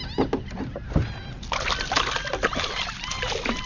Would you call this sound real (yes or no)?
yes